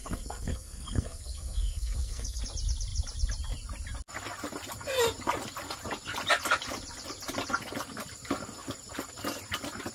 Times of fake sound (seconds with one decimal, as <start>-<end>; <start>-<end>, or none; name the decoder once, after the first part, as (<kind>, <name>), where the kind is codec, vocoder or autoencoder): 0.0-2.4 (codec, SNAC)